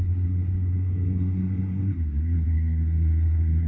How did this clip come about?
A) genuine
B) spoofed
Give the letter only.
B